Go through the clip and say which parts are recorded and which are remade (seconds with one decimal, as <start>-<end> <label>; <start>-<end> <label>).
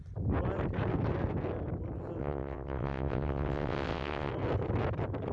0.0-2.2 recorded; 2.2-4.3 remade; 4.3-5.3 recorded